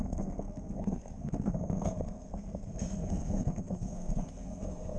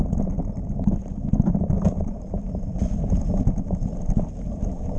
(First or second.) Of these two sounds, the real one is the second